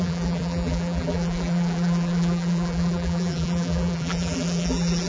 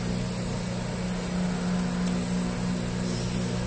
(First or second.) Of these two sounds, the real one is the second